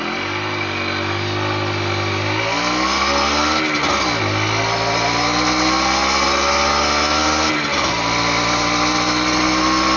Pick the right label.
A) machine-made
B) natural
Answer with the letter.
B